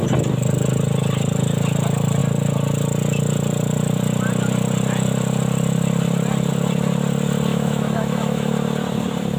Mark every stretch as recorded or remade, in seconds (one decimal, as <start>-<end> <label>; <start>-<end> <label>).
0.0-7.5 recorded; 7.5-8.5 remade; 8.5-9.4 recorded